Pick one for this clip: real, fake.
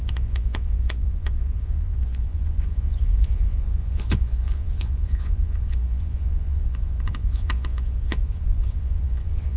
fake